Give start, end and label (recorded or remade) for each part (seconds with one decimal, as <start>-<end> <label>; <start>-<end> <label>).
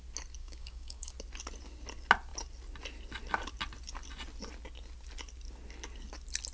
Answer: 0.0-0.4 recorded; 0.4-1.1 remade; 1.1-6.5 recorded